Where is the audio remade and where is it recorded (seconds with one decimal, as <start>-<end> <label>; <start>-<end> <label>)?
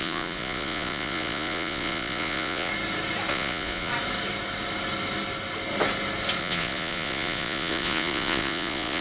0.0-2.7 remade; 2.7-3.3 recorded; 3.3-3.9 remade; 3.9-6.4 recorded; 6.4-9.0 remade